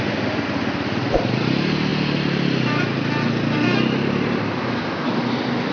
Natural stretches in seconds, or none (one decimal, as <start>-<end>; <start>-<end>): 0.0-5.7